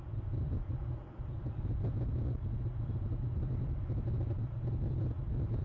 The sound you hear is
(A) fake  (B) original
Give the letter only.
B